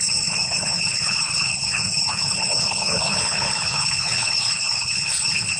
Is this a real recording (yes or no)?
no